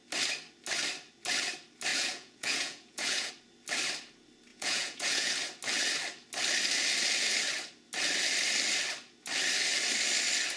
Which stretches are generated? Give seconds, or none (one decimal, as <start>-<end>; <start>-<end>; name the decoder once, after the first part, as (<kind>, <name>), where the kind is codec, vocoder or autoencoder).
1.9-3.3 (vocoder, Vocos); 4.5-5.3